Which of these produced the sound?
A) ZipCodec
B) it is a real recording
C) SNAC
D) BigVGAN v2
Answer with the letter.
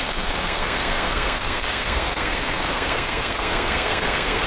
C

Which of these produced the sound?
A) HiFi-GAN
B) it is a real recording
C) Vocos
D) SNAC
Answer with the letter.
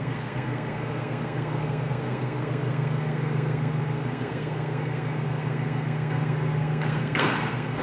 D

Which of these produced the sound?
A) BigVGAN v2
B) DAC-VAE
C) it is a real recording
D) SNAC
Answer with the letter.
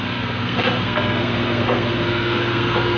D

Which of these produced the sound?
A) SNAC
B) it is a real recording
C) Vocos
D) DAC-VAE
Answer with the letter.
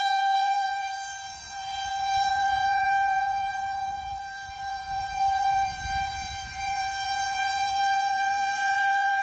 C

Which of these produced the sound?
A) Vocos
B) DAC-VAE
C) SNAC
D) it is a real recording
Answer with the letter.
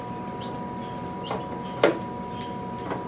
D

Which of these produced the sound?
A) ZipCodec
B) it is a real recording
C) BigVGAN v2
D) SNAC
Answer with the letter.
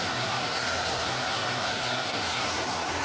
D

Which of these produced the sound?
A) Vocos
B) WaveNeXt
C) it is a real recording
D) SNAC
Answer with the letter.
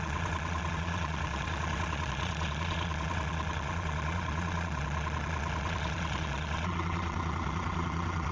A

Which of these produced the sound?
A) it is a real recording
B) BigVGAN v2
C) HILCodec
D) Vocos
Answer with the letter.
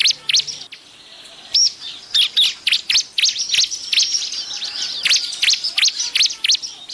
A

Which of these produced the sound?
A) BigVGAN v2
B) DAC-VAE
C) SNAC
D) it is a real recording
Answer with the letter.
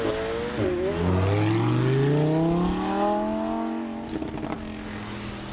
D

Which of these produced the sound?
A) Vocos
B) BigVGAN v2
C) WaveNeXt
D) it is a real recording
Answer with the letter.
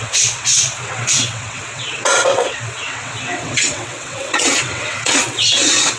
C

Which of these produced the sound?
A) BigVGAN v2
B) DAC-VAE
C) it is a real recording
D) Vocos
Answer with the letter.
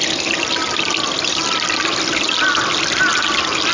C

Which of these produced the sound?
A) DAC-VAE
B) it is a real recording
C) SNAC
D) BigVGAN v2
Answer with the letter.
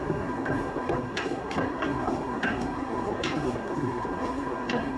C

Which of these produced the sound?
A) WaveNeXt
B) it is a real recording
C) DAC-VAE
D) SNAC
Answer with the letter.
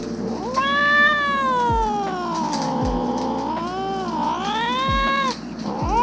B